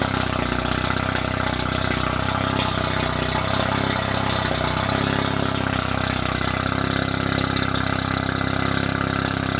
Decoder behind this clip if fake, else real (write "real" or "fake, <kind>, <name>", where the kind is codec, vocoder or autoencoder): real